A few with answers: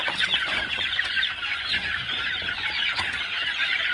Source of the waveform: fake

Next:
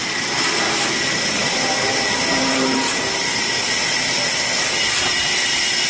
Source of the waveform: real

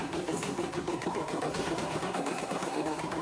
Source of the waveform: fake